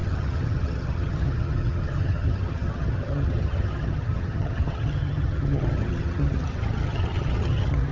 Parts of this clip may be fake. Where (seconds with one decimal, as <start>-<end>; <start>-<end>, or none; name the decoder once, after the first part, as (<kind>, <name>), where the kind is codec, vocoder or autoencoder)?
0.0-7.9 (vocoder, HiFi-GAN)